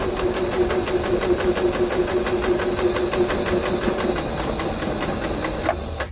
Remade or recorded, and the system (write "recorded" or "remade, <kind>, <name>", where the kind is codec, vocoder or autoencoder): recorded